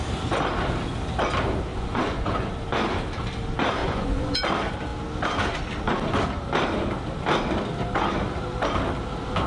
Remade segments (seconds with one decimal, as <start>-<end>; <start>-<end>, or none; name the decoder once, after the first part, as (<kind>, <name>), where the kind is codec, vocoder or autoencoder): 1.7-2.5 (vocoder, Vocos); 3.8-4.5